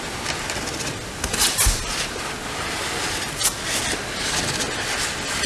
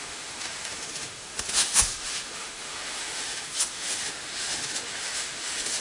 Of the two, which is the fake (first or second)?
second